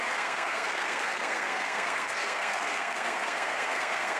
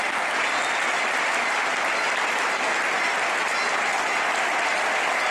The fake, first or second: first